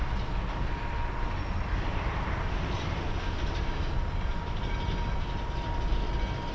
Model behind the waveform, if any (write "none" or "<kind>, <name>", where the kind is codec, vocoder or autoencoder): none